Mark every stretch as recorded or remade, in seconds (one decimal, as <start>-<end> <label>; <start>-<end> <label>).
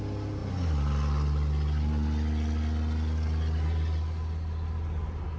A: 0.0-5.4 recorded